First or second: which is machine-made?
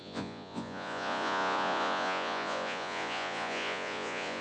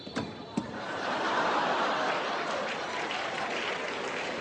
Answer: first